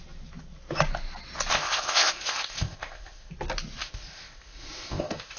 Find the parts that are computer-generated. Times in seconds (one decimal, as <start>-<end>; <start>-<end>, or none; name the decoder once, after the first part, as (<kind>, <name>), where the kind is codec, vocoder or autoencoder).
1.5-3.3 (codec, ZipCodec); 3.8-5.4